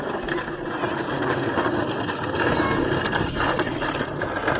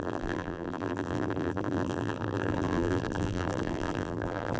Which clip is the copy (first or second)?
second